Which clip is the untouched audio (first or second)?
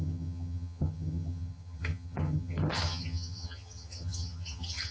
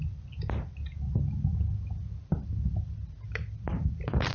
second